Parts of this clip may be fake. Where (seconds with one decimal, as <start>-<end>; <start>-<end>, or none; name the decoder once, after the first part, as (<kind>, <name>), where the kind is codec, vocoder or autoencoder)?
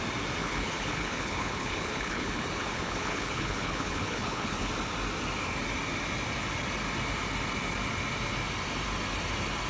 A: 0.4-4.7 (codec, HILCodec)